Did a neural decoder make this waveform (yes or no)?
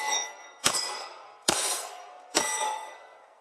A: yes